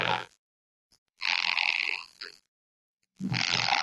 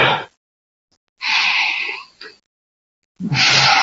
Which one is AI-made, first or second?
first